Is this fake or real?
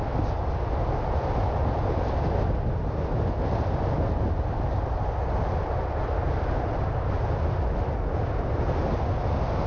real